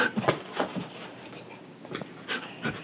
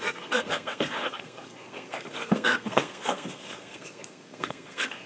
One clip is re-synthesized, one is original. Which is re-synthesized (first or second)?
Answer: second